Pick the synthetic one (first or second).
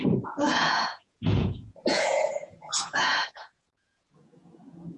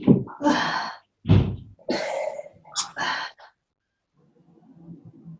first